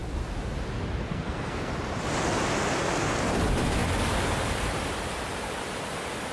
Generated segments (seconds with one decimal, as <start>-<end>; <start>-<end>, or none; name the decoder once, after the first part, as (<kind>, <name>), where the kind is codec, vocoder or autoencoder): 1.1-1.7 (codec, SNAC)